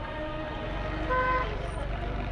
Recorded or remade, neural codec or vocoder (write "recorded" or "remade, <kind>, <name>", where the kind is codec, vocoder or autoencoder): recorded